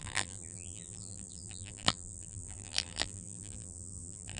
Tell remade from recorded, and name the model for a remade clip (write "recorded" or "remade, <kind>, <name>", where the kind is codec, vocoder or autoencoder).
remade, vocoder, BigVGAN v2